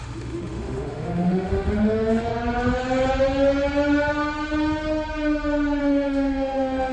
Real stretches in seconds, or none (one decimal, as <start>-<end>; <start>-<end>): 2.3-5.8